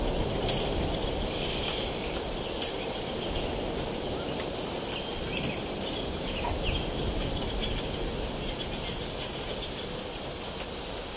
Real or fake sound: real